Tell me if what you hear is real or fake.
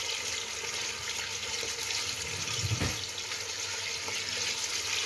real